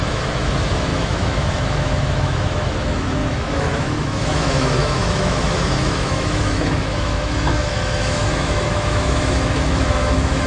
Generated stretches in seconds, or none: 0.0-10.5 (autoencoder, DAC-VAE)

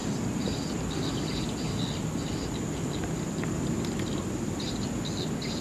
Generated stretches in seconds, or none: none

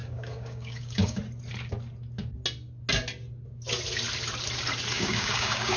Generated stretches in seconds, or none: 0.0-1.2 (codec, DAC); 4.9-5.8

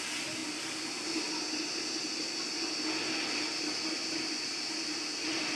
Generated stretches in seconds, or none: none

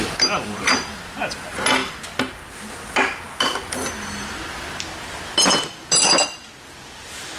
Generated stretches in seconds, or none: none

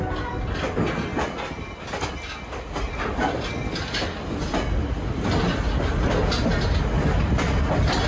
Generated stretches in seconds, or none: none